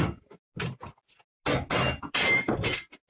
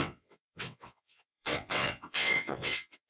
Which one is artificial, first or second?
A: second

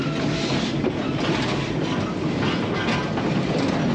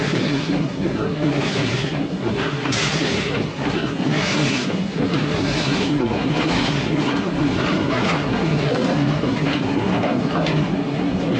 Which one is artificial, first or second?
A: second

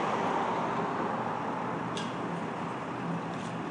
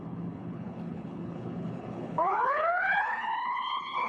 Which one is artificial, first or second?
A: second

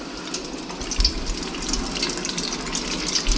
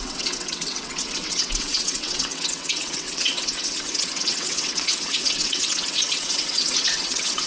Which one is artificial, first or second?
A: second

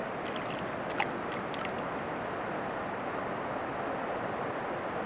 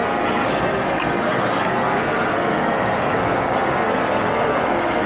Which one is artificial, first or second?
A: second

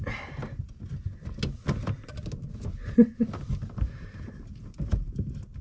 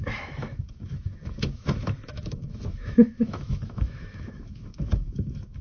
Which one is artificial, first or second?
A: second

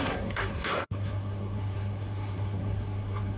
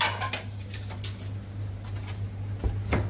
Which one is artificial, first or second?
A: first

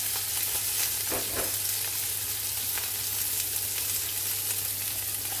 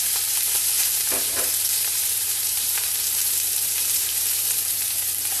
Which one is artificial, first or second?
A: second